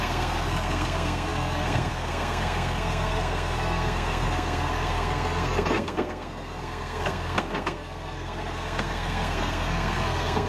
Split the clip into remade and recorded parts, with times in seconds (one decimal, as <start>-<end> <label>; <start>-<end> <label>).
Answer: 0.0-10.5 remade